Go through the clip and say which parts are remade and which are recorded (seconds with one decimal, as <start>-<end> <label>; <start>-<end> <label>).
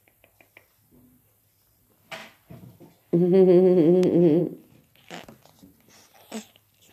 0.0-6.9 recorded